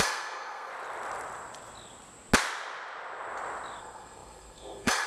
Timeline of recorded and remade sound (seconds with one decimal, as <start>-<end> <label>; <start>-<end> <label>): 0.0-0.7 remade; 0.7-3.8 recorded; 3.8-5.1 remade